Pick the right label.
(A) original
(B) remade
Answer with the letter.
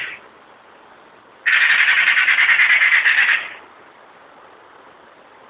A